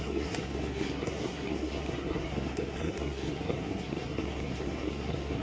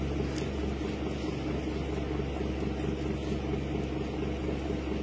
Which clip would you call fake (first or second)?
first